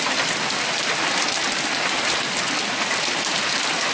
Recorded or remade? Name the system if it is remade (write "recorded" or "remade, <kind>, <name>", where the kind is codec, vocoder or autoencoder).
recorded